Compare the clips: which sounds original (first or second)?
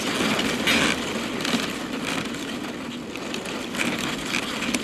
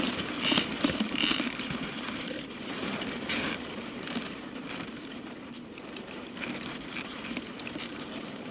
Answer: first